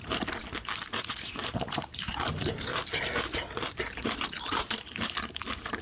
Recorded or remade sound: remade